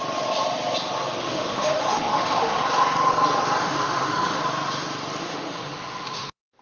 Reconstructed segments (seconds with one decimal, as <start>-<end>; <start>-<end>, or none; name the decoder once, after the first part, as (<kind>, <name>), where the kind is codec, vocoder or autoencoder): 1.2-2.6 (autoencoder, DAC-VAE); 3.6-4.4; 5.2-6.6